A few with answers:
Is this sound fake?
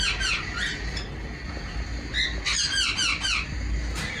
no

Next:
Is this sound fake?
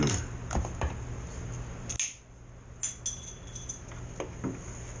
no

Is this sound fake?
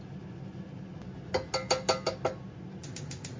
no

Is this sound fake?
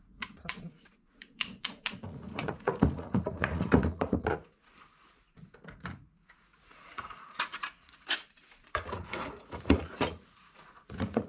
yes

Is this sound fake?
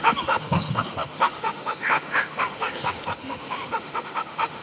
yes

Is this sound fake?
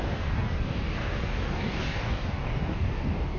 yes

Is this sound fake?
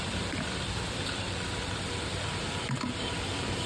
yes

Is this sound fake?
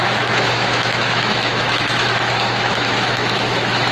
yes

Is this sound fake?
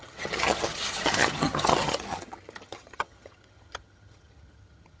yes